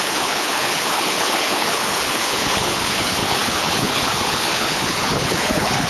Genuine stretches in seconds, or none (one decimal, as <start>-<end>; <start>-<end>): none

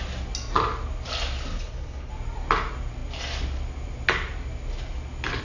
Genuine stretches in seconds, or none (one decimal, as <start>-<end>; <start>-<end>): 0.0-1.5; 2.1-5.4

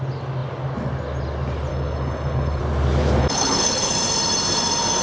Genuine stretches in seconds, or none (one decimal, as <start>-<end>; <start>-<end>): 0.0-1.7; 2.6-3.2; 3.9-5.0

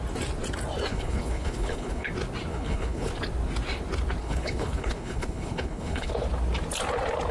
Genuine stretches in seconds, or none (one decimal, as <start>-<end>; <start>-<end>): 0.0-0.9; 2.1-2.5; 3.1-4.2; 6.1-7.3

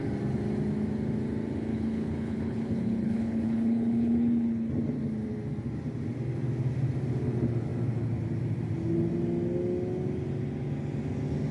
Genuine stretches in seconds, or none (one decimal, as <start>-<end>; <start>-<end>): 0.0-1.7; 4.7-11.5

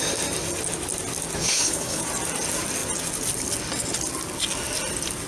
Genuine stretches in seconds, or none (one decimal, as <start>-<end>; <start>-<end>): 0.0-1.4; 2.0-5.3